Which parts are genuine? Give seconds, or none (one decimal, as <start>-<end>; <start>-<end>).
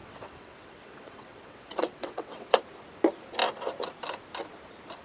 2.6-5.0